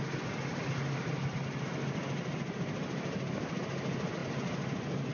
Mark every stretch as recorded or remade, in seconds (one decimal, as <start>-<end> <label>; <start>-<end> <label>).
0.0-5.1 recorded